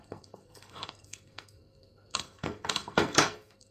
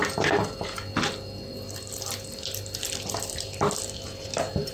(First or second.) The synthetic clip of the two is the first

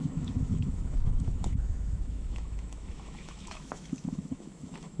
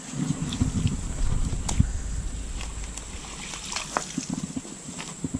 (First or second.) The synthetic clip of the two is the first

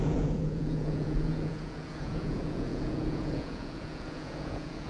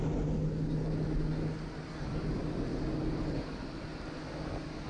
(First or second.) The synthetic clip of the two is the first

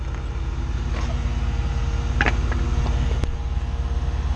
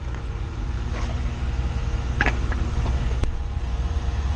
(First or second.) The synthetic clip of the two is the second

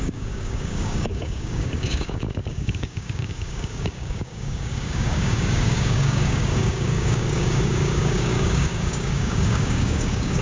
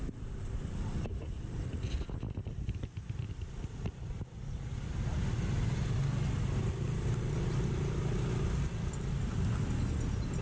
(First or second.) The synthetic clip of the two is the first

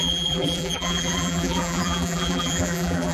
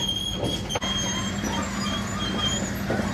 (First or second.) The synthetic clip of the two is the first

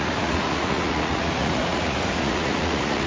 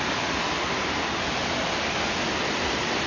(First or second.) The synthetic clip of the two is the first